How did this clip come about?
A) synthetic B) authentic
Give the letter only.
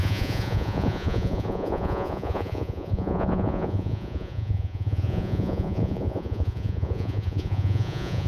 A